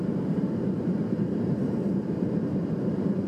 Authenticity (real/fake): fake